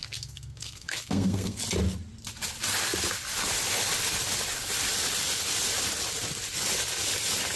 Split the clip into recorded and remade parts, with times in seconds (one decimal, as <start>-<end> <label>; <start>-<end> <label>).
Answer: 0.0-1.6 remade; 1.6-7.6 recorded